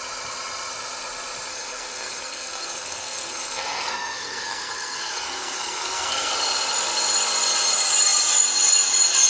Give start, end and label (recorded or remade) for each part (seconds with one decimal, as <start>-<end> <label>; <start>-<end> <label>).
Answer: 0.0-1.5 recorded; 1.5-6.3 remade; 6.3-9.3 recorded